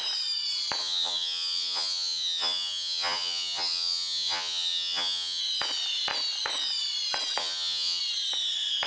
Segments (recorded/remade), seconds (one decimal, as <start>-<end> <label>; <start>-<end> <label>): 0.0-0.8 recorded; 0.8-5.4 remade; 5.4-7.4 recorded; 7.4-8.0 remade; 8.0-8.9 recorded